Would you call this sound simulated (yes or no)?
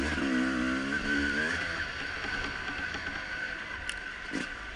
no